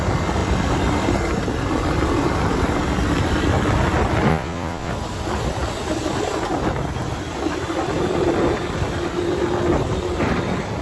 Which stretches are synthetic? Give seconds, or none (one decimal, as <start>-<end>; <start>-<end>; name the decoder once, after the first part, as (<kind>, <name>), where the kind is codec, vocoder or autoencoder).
4.3-4.9 (vocoder, Vocos)